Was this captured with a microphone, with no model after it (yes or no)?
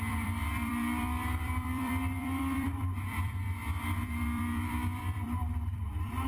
no